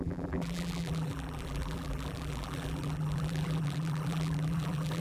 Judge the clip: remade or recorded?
remade